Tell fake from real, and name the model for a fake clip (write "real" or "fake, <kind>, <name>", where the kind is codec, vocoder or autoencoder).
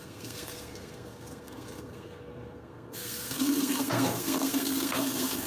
fake, codec, SNAC